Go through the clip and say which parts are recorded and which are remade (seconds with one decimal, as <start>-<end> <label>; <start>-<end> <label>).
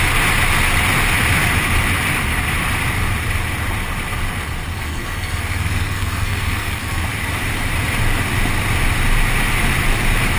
0.0-4.7 recorded; 4.7-7.0 remade; 7.0-10.4 recorded